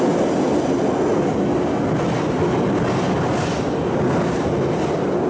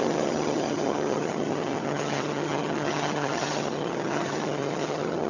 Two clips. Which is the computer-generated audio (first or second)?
second